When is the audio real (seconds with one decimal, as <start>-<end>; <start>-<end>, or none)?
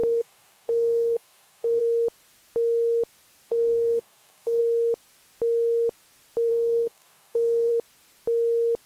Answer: 1.8-3.5; 4.6-6.5; 7.7-8.9